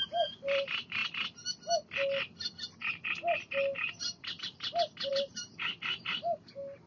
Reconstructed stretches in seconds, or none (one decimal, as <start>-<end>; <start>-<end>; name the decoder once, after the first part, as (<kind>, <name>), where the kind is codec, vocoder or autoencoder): 0.0-1.0 (vocoder, BigVGAN v2); 4.0-4.4; 5.1-6.9